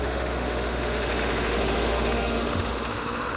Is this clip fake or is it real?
fake